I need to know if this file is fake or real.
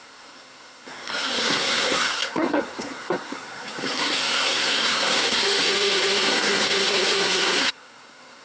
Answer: fake